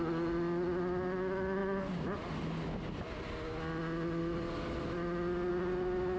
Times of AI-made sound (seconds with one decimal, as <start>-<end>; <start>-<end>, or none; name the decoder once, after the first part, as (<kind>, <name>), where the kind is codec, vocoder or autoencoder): none